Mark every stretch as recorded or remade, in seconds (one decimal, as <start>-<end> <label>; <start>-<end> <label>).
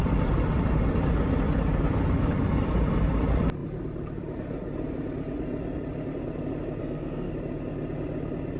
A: 0.0-6.8 recorded; 6.8-7.3 remade; 7.3-8.6 recorded